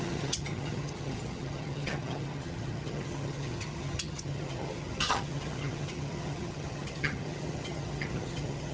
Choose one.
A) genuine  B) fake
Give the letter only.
B